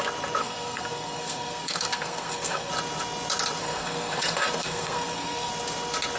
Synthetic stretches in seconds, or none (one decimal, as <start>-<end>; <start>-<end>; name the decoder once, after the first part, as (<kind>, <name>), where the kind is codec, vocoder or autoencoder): 0.4-2.7 (codec, SNAC); 3.6-5.5